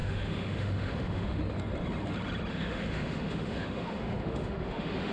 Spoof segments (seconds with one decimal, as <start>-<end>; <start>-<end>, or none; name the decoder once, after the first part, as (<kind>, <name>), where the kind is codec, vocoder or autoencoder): 0.0-1.4 (autoencoder, DAC-VAE); 2.5-5.1